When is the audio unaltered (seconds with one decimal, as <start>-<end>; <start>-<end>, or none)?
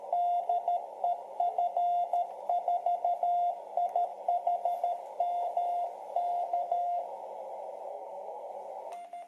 0.0-6.5; 7.0-7.9; 8.5-9.3